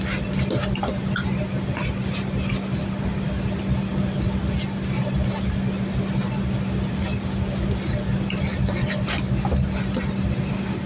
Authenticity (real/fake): real